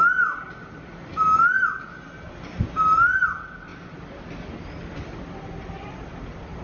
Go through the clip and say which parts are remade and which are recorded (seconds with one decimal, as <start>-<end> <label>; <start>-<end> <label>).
0.0-6.6 recorded